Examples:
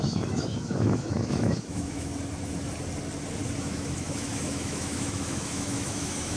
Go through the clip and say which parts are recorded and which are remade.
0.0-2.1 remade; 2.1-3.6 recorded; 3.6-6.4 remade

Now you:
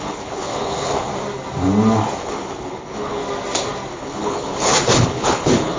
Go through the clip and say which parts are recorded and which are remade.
0.0-1.1 remade; 1.1-2.2 recorded; 2.2-3.2 remade; 3.2-3.9 recorded; 3.9-5.8 remade

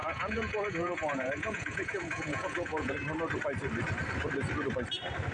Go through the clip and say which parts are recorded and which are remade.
0.0-2.9 remade; 2.9-5.3 recorded

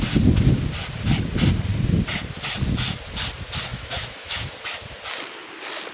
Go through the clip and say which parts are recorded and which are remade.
0.0-3.7 recorded; 3.7-4.5 remade; 4.5-5.9 recorded

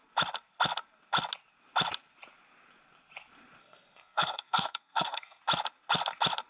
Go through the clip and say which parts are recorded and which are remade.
0.0-3.6 recorded; 3.6-5.4 remade; 5.4-6.5 recorded

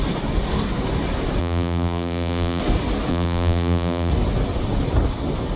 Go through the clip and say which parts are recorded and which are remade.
0.0-1.4 recorded; 1.4-2.6 remade; 2.6-3.1 recorded; 3.1-4.1 remade; 4.1-5.6 recorded